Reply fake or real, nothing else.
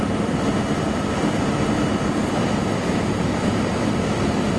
real